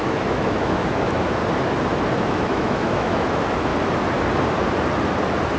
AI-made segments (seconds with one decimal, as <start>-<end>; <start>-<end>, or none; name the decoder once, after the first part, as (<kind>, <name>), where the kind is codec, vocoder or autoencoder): 0.0-1.4 (autoencoder, DAC-VAE); 2.2-3.7